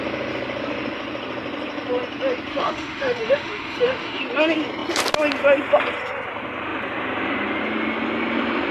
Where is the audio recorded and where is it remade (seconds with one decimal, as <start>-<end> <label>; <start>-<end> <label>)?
0.0-2.5 recorded; 2.5-4.2 remade; 4.2-8.7 recorded